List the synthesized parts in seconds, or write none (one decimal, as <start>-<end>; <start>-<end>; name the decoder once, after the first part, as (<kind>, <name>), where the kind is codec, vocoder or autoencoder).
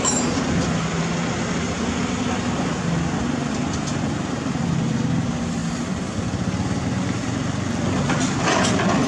none